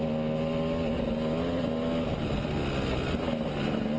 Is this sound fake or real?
real